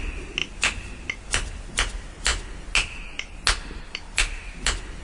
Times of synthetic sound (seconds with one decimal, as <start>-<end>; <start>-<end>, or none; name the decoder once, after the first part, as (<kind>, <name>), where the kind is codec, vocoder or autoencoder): none